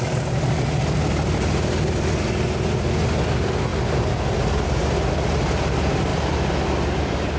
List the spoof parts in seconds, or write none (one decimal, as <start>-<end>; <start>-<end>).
none